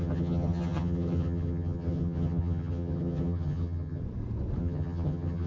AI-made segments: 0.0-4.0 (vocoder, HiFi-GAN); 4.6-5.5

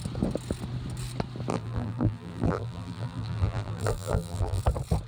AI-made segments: 1.5-4.6 (vocoder, BigVGAN v2)